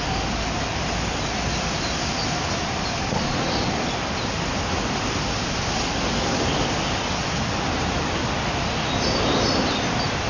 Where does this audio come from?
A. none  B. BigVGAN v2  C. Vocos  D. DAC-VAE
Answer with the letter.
A